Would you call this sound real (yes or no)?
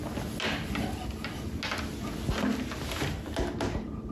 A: yes